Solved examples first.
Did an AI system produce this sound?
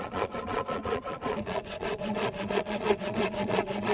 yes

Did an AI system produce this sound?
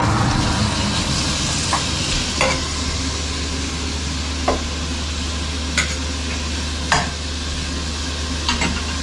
no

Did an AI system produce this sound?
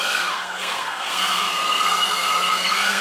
yes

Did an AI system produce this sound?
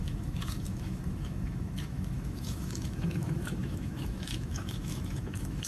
yes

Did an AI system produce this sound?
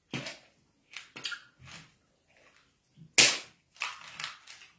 no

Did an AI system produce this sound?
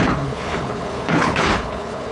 yes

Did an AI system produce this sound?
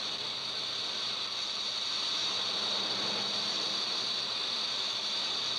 no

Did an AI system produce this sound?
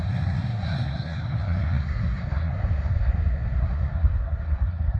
yes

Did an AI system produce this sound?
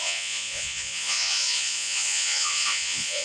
yes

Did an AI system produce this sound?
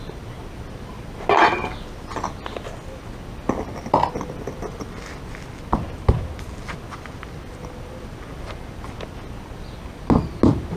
no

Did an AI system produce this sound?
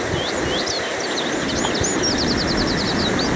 no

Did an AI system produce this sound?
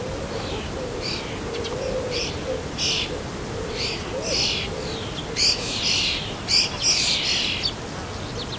no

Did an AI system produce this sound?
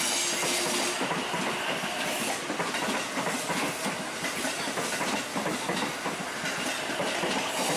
no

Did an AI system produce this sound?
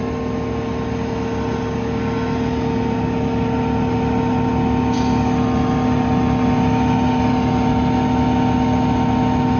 no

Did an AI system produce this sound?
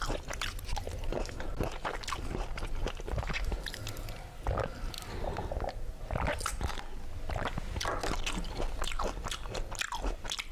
no